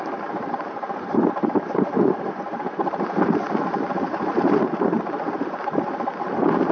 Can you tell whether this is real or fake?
fake